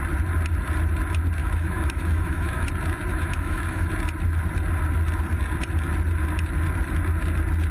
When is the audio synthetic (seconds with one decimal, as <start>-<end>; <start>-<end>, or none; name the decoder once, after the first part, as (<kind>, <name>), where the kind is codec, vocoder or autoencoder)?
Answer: 1.4-2.7 (autoencoder, DAC-VAE); 3.1-3.9